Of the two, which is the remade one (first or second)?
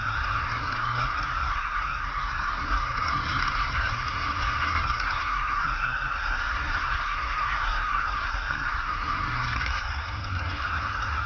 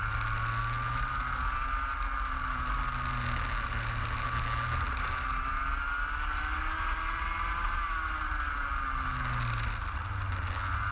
first